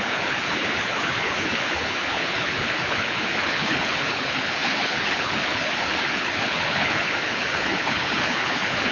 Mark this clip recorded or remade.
remade